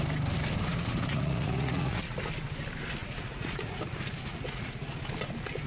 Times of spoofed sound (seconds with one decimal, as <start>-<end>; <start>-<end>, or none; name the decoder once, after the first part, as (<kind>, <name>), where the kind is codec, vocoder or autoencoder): 0.7-2.2 (vocoder, Vocos); 3.0-3.8; 4.3-4.9